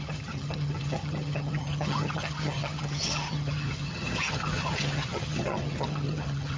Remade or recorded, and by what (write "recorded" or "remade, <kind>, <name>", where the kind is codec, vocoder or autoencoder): remade, vocoder, HiFi-GAN